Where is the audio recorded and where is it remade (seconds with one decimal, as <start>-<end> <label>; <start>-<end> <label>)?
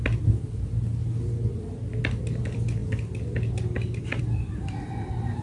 0.0-5.4 recorded